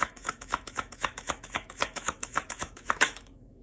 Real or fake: fake